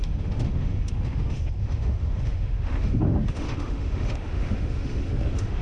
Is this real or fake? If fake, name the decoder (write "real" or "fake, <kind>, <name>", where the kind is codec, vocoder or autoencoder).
fake, autoencoder, DAC-VAE